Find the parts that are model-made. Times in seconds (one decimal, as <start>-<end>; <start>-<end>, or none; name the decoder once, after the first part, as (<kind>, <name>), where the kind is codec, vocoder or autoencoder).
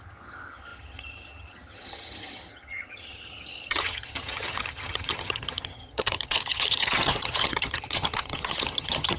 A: 0.0-9.2 (vocoder, HiFi-GAN)